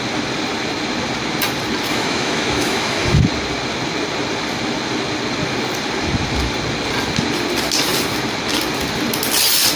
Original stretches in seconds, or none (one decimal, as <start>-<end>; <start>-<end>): 0.0-1.9; 3.2-9.8